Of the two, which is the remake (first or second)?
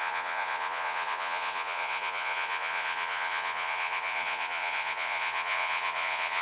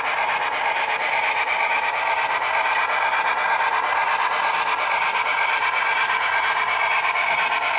first